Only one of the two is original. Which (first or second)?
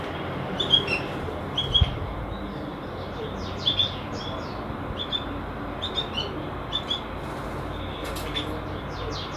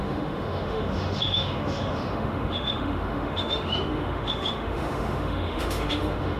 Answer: first